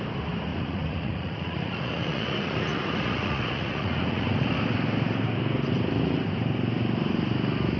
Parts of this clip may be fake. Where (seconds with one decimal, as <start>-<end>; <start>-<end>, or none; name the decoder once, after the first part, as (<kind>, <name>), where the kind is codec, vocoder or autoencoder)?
0.5-4.5 (vocoder, Vocos)